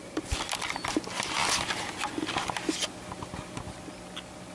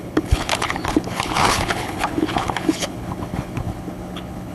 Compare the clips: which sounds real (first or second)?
first